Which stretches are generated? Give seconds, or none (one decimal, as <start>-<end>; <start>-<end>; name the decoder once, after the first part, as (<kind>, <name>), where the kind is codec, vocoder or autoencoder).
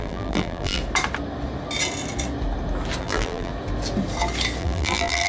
0.0-0.8 (vocoder, BigVGAN v2); 3.0-3.5; 4.6-5.3